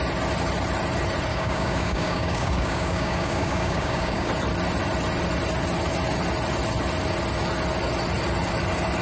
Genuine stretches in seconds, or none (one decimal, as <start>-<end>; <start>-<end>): 0.0-1.3; 4.3-9.0